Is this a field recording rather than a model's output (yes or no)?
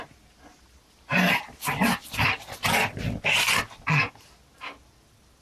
yes